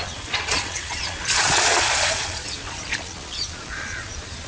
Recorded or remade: remade